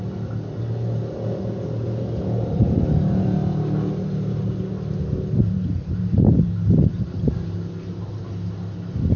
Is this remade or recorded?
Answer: recorded